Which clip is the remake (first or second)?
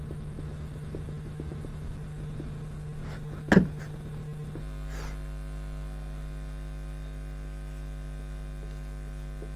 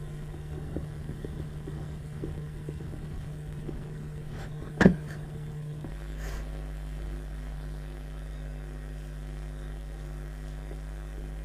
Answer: second